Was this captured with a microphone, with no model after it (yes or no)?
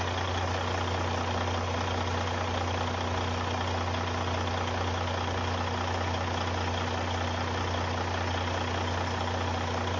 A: yes